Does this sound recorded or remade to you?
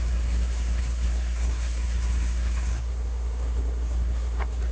remade